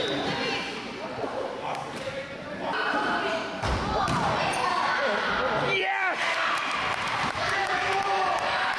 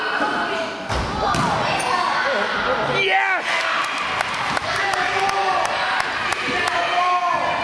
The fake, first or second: first